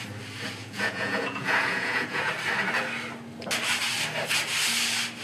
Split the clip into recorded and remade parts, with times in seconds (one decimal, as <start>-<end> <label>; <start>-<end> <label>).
0.0-0.6 recorded; 0.6-2.3 remade; 2.3-5.2 recorded